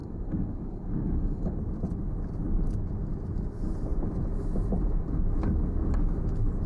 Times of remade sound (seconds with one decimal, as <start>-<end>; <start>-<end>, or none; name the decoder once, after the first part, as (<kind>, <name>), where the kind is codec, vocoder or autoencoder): 0.0-1.6 (codec, DAC)